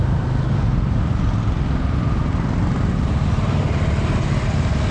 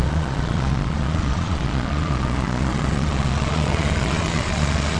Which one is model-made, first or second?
second